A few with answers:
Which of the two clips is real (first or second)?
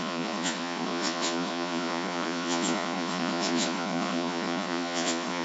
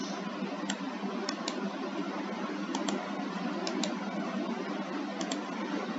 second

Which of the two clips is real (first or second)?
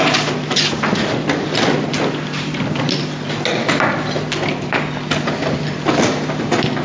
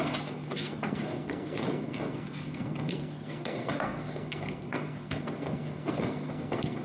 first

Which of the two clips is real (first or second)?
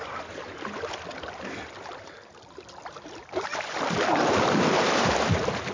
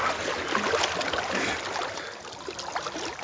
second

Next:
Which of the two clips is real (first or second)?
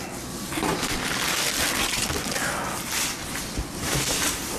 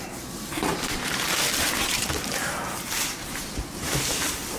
first